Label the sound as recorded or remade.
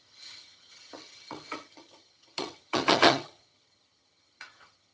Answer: remade